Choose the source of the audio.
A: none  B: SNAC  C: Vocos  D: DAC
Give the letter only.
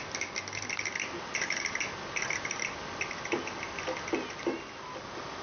A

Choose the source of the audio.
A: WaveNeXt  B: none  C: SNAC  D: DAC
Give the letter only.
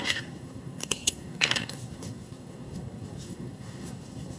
C